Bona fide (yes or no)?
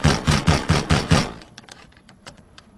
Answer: no